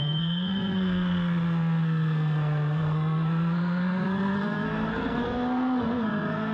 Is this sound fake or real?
fake